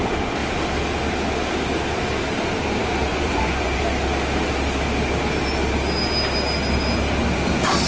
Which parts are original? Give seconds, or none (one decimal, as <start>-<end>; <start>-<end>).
0.0-3.1; 3.8-7.9